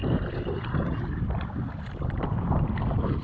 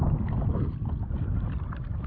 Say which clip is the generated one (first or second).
first